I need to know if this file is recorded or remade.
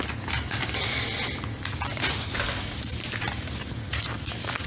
recorded